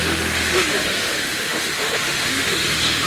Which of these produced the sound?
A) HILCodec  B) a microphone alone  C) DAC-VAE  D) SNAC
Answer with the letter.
C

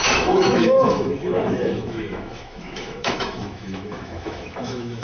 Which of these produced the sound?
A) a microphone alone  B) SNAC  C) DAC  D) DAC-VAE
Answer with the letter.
D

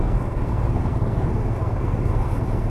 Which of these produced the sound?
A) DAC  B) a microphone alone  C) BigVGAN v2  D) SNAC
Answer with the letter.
D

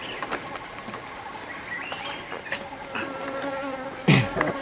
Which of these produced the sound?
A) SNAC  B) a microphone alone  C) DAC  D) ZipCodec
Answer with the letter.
B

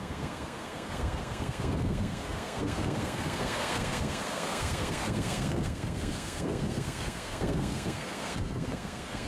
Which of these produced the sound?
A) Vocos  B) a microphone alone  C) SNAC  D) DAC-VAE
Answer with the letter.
C